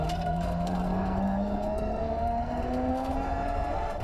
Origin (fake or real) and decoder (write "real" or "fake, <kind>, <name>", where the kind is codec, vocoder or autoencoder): fake, codec, SNAC